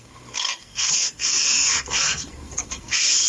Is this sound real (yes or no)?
no